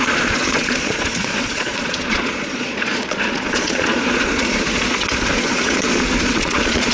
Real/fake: fake